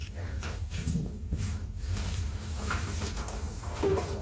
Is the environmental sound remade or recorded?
remade